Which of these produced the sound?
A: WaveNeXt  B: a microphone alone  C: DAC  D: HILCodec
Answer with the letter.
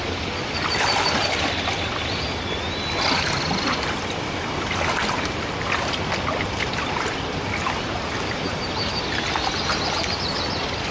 B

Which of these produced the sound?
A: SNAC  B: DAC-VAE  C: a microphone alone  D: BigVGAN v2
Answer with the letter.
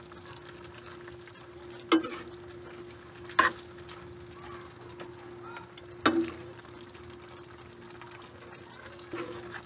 C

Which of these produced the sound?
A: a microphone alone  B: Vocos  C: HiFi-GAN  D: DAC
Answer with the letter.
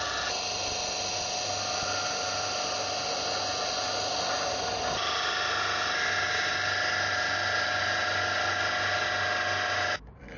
A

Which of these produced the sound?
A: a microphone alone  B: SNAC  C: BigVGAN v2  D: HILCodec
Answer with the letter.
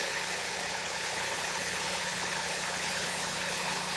D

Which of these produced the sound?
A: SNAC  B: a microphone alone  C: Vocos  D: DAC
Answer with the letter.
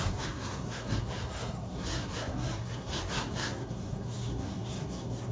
A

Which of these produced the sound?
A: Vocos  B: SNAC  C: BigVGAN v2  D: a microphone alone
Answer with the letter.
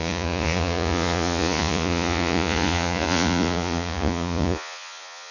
A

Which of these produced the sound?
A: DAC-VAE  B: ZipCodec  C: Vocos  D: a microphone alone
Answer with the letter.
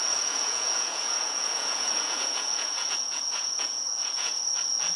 C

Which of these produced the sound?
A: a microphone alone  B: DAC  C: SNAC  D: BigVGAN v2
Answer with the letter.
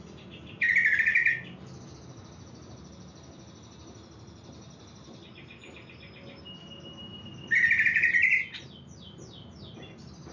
A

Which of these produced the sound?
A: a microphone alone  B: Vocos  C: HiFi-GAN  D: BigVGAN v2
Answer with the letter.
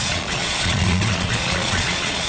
B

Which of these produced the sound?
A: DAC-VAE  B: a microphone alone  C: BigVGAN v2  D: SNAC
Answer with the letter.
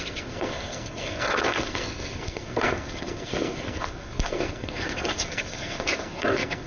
D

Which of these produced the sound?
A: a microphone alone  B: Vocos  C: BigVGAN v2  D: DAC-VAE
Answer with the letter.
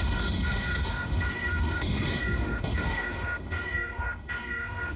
D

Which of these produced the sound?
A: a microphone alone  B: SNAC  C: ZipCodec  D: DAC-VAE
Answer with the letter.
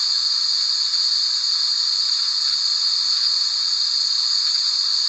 A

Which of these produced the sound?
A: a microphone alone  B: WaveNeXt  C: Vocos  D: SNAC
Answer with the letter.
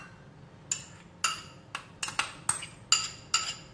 A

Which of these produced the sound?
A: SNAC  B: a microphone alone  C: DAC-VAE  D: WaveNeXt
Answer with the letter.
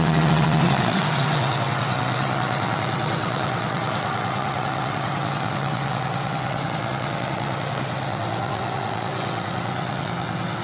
D